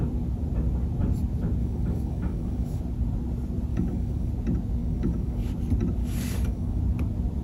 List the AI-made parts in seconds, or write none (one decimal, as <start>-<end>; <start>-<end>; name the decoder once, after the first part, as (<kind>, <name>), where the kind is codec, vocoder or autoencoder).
1.6-2.8 (codec, DAC); 3.7-4.3; 4.8-5.5; 6.0-6.8